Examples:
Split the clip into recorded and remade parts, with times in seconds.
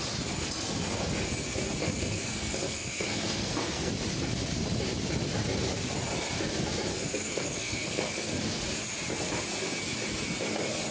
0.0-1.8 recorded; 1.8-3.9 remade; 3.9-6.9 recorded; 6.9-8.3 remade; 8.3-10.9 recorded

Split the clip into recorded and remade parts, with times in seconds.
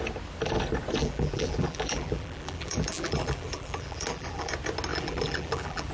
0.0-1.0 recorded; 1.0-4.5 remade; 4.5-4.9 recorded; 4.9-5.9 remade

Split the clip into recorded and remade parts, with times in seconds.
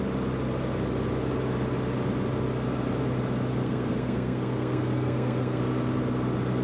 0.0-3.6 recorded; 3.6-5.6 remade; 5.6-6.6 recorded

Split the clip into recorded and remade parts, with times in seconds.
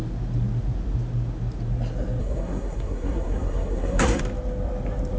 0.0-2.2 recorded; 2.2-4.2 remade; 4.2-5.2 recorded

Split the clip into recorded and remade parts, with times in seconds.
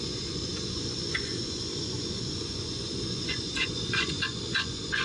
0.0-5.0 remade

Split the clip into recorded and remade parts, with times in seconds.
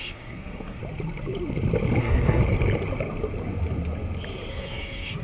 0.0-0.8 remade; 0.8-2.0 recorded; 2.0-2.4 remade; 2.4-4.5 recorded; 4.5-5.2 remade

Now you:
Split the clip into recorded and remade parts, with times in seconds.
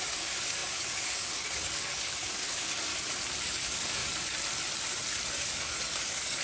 0.0-2.9 remade; 2.9-3.4 recorded; 3.4-4.0 remade; 4.0-5.3 recorded; 5.3-6.4 remade